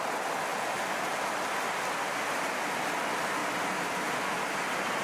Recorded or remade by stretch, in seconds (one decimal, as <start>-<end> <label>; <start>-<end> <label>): 0.0-3.4 recorded; 3.4-4.2 remade; 4.2-5.0 recorded